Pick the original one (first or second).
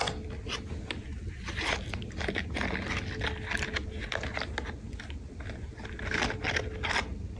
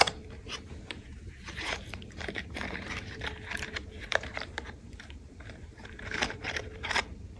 first